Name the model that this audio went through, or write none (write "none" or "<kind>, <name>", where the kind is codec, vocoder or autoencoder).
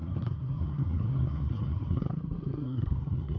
codec, SNAC